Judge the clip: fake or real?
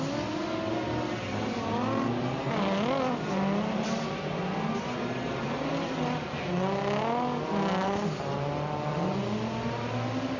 real